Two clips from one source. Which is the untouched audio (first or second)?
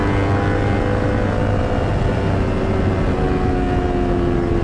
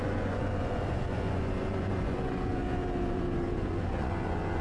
first